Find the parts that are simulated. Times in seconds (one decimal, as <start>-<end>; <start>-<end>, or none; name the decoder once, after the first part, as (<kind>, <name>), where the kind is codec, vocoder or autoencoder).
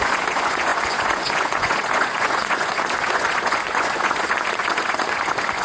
0.0-5.6 (vocoder, Vocos)